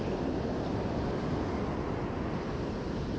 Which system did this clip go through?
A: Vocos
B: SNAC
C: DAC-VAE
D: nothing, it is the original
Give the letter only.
D